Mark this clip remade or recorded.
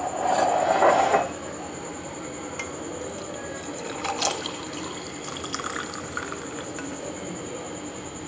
recorded